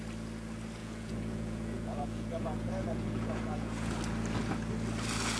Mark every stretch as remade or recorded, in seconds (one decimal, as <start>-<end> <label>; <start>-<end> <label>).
0.0-0.8 recorded; 0.8-4.0 remade; 4.0-5.4 recorded

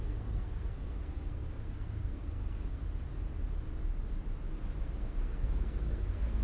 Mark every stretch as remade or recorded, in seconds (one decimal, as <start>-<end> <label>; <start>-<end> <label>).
0.0-2.8 remade; 2.8-4.8 recorded; 4.8-6.4 remade